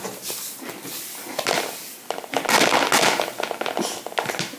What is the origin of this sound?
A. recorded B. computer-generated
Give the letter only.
A